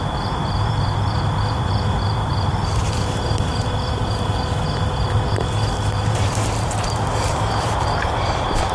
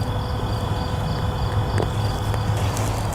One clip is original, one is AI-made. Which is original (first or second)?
second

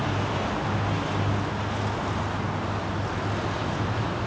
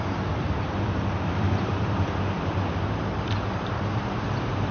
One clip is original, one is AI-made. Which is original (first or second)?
first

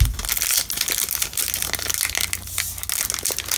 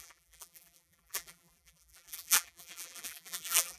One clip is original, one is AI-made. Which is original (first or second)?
first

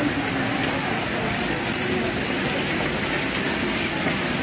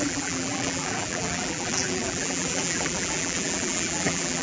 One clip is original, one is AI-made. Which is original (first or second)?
first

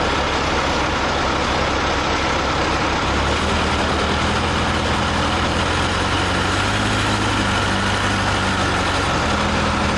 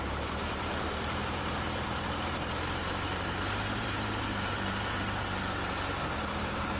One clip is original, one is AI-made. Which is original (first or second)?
first